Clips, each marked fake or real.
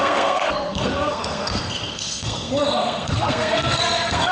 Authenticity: fake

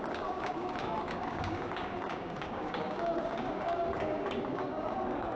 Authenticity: fake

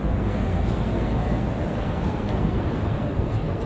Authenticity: fake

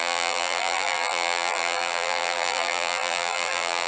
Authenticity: fake